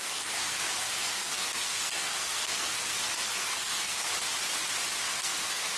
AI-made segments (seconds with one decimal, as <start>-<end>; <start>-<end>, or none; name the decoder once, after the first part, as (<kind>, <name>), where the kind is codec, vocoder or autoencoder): 0.0-4.1 (codec, SNAC); 5.0-5.8